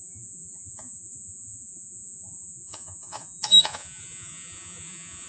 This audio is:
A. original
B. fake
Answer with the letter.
B